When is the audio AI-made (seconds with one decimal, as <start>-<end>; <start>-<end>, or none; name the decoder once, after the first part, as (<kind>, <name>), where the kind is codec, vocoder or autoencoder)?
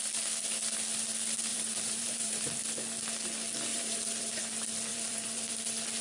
1.5-2.6 (vocoder, BigVGAN v2); 3.7-4.4; 4.9-5.5